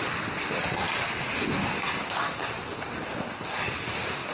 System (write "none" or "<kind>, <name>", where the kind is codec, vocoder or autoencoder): none